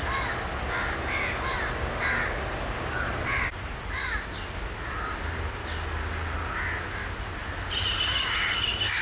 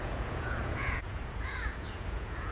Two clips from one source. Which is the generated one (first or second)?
second